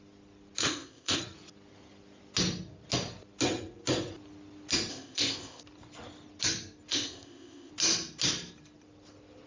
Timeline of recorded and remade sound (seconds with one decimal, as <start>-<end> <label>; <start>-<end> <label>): 0.0-0.6 recorded; 0.6-1.2 remade; 1.2-4.9 recorded; 4.9-5.6 remade; 5.6-6.9 recorded; 6.9-7.7 remade; 7.7-9.5 recorded

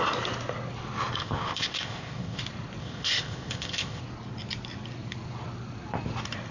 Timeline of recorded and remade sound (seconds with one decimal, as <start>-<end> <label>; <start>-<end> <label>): 0.0-1.2 recorded; 1.2-2.4 remade; 2.4-2.8 recorded; 2.8-4.0 remade; 4.0-6.5 recorded

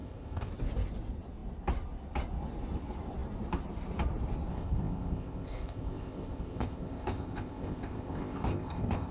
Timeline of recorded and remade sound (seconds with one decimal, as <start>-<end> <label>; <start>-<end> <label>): 0.0-0.5 remade; 0.5-4.5 recorded; 4.5-9.1 remade